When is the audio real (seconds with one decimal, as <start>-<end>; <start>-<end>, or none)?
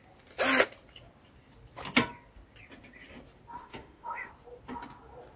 0.0-3.6; 4.3-5.4